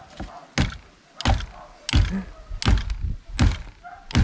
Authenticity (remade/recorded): recorded